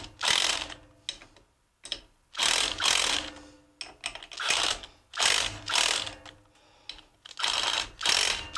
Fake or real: real